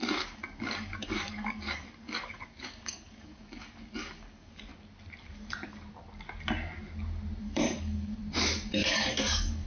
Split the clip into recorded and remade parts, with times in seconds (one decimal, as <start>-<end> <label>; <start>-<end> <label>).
0.0-4.7 remade; 4.7-7.4 recorded; 7.4-8.2 remade; 8.2-8.7 recorded; 8.7-9.7 remade